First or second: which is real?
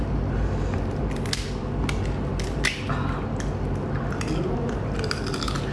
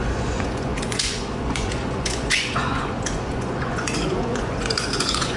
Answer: first